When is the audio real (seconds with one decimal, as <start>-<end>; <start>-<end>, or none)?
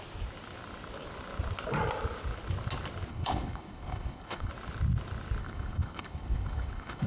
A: 0.0-3.1; 4.5-5.4